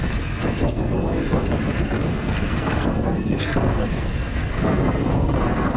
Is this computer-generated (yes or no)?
yes